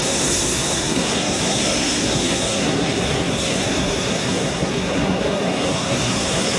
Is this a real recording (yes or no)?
no